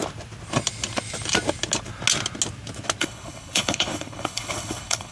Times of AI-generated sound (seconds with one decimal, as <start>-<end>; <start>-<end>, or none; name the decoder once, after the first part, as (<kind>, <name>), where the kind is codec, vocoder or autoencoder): 3.0-5.1 (codec, HILCodec)